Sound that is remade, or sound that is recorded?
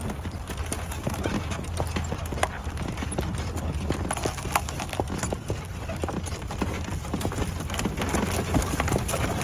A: recorded